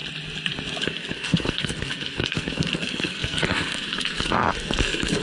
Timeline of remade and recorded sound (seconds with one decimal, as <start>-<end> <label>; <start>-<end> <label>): 0.0-0.8 recorded; 0.8-5.2 remade